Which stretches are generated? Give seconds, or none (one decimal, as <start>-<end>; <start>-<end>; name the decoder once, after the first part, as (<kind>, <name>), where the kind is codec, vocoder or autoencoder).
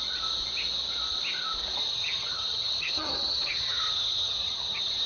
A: 1.7-5.1 (vocoder, HiFi-GAN)